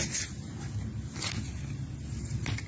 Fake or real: real